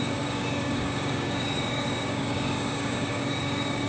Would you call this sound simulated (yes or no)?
yes